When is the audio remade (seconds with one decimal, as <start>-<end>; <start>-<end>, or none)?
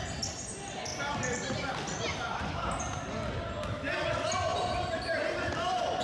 0.9-1.7; 4.5-6.0